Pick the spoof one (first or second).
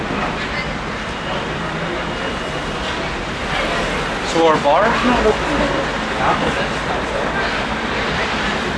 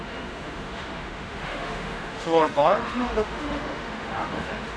second